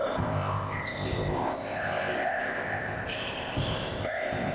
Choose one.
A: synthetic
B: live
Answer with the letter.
A